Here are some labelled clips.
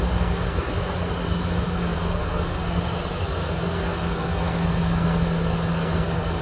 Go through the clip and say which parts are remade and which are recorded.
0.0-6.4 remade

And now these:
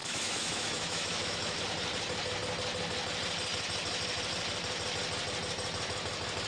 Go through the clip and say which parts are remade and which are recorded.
0.0-1.6 remade; 1.6-6.5 recorded

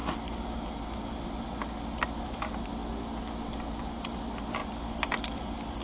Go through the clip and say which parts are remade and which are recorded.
0.0-5.8 recorded

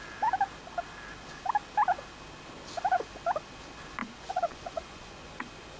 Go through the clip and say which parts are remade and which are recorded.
0.0-4.0 recorded; 4.0-5.8 remade

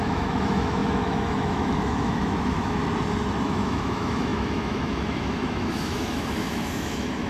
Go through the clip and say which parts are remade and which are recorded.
0.0-2.8 remade; 2.8-3.4 recorded; 3.4-7.3 remade

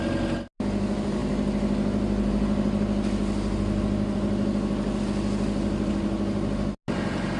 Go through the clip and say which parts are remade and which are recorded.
0.0-7.4 recorded

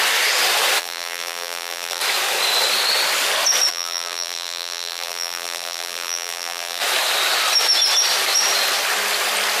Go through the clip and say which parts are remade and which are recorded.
0.0-0.8 recorded; 0.8-2.0 remade; 2.0-3.7 recorded; 3.7-6.8 remade; 6.8-9.6 recorded

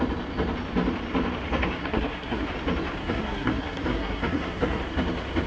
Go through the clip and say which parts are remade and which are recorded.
0.0-1.8 recorded; 1.8-2.5 remade; 2.5-3.0 recorded; 3.0-4.8 remade; 4.8-5.5 recorded